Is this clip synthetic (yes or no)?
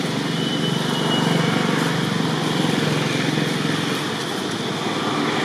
no